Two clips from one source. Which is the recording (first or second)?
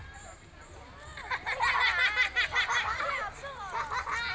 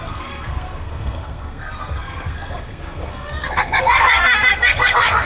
first